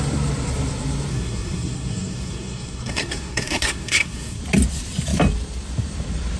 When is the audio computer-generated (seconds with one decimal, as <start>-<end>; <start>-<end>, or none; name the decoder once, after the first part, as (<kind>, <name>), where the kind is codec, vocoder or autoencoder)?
1.1-4.4 (codec, SNAC)